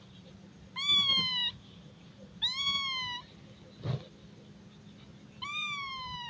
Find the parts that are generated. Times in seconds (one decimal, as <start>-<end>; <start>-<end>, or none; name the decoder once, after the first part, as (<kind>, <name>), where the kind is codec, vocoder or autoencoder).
5.5-6.3 (vocoder, BigVGAN v2)